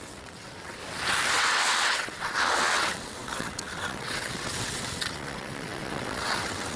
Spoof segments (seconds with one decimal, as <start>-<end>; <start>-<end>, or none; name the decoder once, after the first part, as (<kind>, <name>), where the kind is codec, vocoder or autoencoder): 0.0-0.8 (vocoder, WaveNeXt); 1.4-6.8